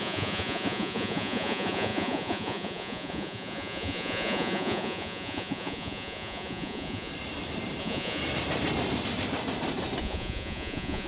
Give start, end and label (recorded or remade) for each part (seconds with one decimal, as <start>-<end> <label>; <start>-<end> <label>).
0.0-7.1 remade; 7.1-7.8 recorded; 7.8-8.2 remade; 8.2-10.0 recorded; 10.0-11.1 remade